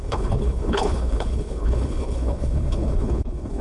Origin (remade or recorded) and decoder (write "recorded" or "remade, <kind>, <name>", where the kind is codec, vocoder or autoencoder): remade, codec, HILCodec